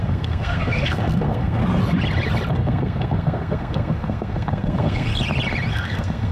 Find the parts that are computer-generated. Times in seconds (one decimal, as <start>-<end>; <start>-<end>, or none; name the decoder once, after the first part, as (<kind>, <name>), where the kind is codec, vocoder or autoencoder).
0.0-1.6 (codec, SNAC); 2.5-5.1; 5.7-6.3